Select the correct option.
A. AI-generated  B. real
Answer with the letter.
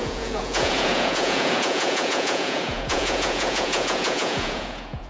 A